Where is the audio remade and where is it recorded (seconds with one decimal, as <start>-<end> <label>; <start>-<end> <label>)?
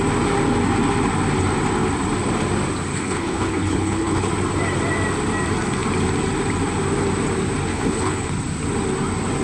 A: 0.0-2.9 recorded; 2.9-4.3 remade; 4.3-7.7 recorded; 7.7-8.3 remade; 8.3-9.4 recorded